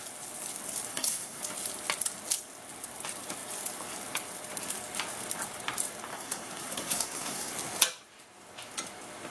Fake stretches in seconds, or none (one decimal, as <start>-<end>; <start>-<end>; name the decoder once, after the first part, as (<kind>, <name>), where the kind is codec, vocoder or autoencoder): 0.9-1.4 (codec, SNAC); 6.1-7.5